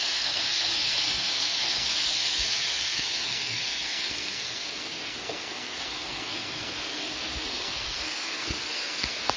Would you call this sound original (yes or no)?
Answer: no